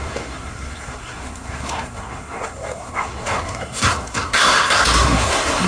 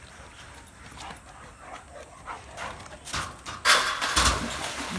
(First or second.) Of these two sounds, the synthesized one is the first